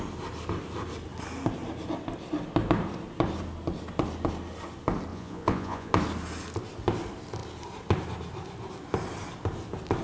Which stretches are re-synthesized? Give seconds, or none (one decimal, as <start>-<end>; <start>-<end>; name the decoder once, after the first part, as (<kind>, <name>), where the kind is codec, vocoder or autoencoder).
5.1-5.9 (vocoder, Vocos)